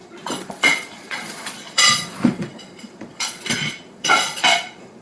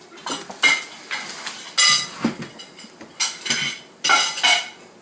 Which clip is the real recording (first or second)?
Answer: second